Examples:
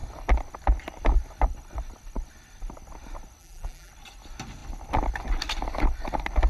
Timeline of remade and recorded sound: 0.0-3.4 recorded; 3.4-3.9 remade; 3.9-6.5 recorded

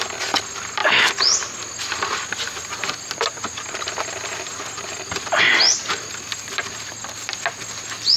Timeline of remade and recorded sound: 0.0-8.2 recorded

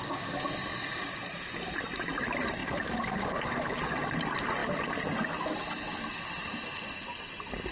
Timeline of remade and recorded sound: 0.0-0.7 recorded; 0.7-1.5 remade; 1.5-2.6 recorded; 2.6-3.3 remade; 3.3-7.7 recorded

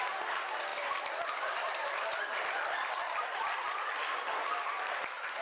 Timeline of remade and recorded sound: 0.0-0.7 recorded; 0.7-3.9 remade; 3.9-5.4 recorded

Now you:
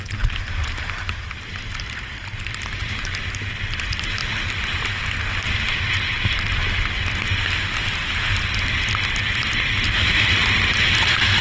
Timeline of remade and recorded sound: 0.0-4.2 remade; 4.2-9.2 recorded; 9.2-10.4 remade; 10.4-11.4 recorded

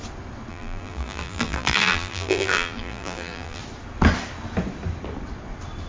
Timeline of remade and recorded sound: 0.0-0.5 recorded; 0.5-3.6 remade; 3.6-5.9 recorded